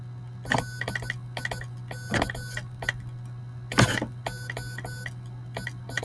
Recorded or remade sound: recorded